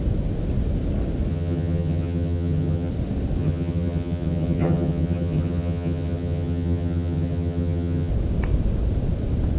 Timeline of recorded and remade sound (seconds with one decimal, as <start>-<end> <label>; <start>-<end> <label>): 0.0-1.3 recorded; 1.3-2.9 remade; 2.9-3.4 recorded; 3.4-8.1 remade; 8.1-9.6 recorded